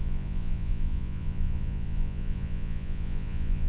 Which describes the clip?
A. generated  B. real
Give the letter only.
A